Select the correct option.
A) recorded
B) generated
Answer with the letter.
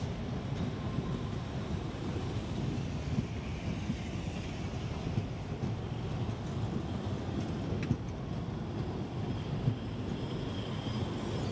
A